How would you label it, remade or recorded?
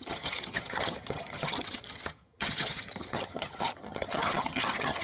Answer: remade